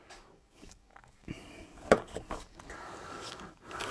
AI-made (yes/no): yes